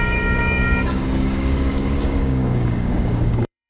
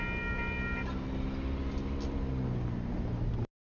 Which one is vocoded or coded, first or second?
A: first